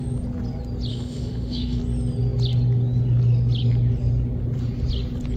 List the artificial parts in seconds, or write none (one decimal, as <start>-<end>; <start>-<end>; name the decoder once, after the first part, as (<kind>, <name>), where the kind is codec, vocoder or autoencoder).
0.9-1.8 (autoencoder, DAC-VAE)